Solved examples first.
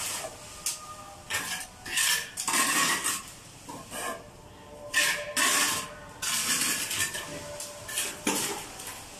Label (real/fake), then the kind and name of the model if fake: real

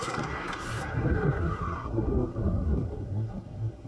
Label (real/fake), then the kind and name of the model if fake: fake, codec, SNAC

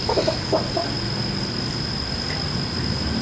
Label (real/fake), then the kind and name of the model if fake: real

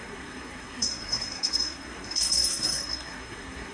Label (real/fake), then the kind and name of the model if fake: fake, codec, SNAC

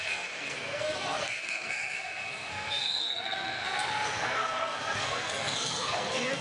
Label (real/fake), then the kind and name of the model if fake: fake, codec, SNAC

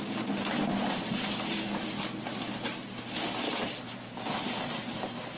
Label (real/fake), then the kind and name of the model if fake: real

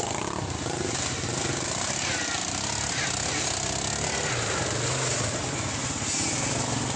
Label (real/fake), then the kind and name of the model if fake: real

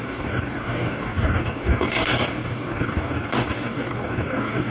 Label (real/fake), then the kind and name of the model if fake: fake, codec, DAC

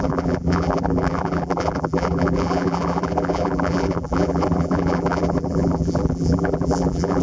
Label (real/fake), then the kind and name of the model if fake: fake, vocoder, BigVGAN v2